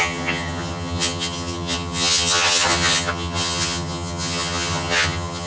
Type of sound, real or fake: fake